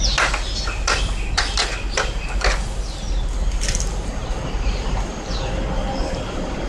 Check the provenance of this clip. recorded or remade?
recorded